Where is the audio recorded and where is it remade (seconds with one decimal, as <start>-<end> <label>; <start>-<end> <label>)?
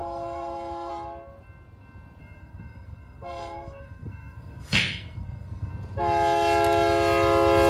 0.0-0.9 remade; 0.9-2.2 recorded; 2.2-5.7 remade; 5.7-7.7 recorded